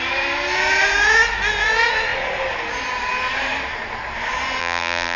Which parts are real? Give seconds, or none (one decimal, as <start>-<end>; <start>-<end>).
0.0-4.6